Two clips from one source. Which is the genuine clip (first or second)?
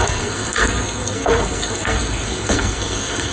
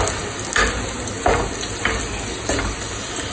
second